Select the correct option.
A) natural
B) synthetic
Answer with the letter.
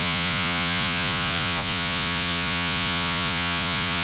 B